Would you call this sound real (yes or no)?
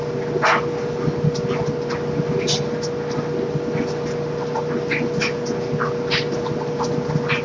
yes